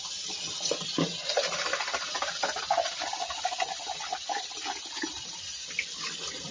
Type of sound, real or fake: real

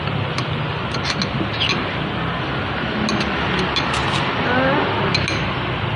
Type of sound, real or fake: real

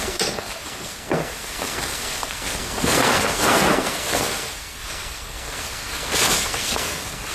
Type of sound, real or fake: fake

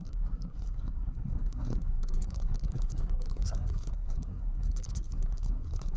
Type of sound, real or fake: fake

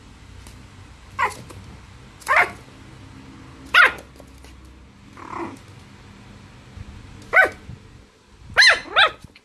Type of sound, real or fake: real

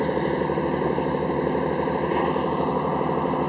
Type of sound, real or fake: real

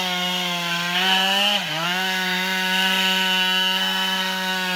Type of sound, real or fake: fake